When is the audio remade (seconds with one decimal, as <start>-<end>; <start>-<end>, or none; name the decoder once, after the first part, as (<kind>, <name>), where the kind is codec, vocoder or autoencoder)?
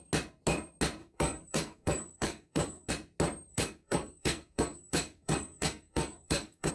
1.0-2.9 (codec, SNAC); 3.5-6.7